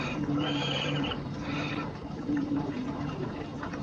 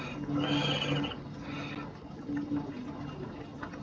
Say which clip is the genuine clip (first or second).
second